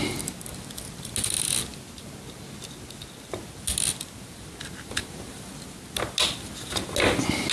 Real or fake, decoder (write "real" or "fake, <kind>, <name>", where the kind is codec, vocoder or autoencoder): real